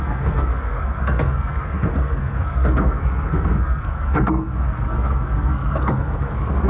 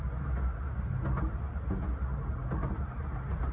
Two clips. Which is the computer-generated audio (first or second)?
first